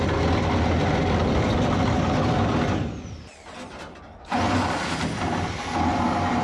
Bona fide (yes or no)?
yes